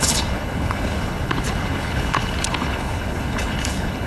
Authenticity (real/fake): fake